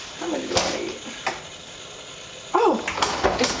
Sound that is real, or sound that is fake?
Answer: real